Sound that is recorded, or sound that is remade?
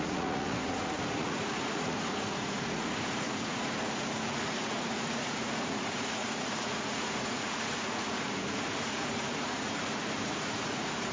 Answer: remade